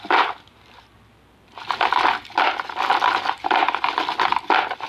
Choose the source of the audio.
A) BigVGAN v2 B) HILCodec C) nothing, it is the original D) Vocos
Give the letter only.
C